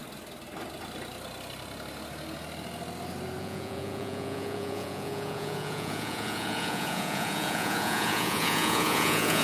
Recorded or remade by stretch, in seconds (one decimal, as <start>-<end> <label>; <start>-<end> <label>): 0.0-3.4 recorded; 3.4-9.4 remade

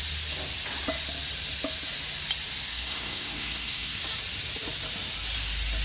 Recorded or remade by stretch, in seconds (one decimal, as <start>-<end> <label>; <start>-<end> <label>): 0.0-2.7 recorded; 2.7-4.0 remade; 4.0-5.8 recorded

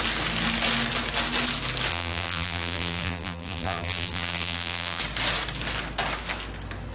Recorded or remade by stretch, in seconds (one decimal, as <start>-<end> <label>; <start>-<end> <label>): 0.0-1.9 recorded; 1.9-5.0 remade; 5.0-6.9 recorded